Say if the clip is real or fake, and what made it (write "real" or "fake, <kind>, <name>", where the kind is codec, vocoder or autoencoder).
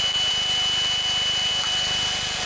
real